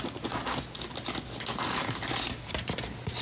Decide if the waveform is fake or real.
real